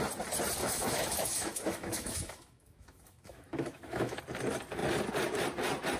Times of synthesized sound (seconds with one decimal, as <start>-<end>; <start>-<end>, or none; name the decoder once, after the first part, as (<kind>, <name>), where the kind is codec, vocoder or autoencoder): 0.6-4.2 (autoencoder, DAC-VAE)